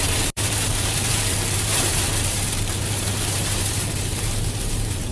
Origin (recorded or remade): remade